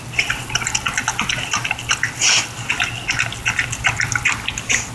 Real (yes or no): yes